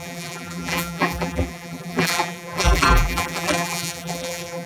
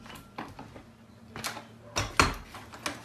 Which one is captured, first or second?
second